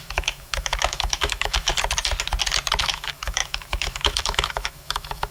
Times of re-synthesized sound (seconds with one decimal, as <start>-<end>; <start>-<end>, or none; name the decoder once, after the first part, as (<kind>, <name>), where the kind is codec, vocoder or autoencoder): 0.0-1.7 (autoencoder, DAC-VAE); 2.8-5.3